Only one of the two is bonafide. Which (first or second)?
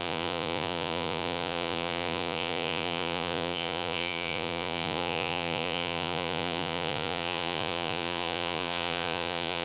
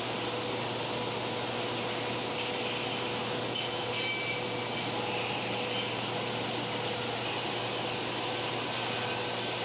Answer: second